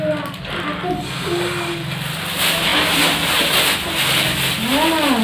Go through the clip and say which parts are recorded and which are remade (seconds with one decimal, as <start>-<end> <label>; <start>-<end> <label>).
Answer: 0.0-5.2 recorded